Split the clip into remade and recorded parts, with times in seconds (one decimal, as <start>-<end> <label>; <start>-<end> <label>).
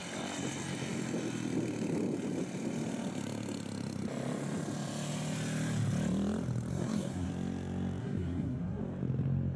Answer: 0.0-6.7 recorded; 6.7-7.3 remade; 7.3-8.0 recorded; 8.0-8.8 remade; 8.8-9.6 recorded